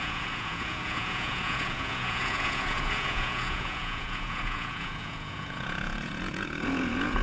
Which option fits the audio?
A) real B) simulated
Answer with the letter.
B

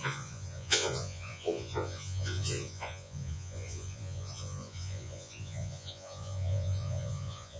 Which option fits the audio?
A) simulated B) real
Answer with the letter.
A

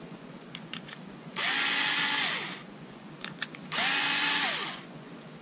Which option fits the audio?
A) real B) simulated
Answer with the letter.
B